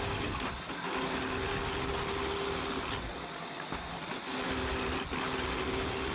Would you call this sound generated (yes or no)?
no